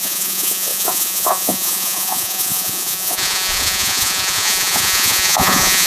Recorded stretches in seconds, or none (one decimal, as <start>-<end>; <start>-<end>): none